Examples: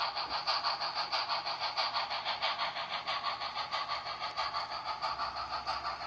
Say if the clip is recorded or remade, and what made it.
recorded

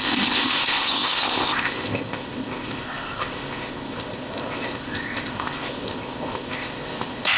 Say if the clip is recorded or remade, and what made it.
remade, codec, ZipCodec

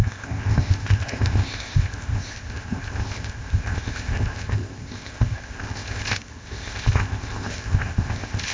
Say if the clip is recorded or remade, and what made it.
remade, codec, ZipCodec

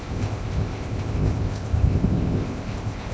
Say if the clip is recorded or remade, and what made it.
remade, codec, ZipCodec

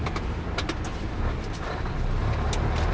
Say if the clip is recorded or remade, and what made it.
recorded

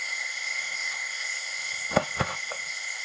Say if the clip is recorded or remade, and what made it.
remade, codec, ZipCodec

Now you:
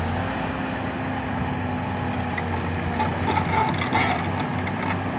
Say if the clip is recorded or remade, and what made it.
recorded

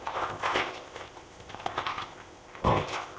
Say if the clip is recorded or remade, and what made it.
remade, codec, ZipCodec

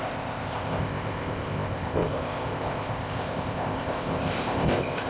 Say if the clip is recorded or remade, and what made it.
remade, codec, ZipCodec